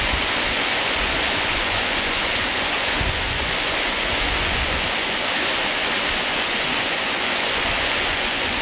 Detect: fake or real fake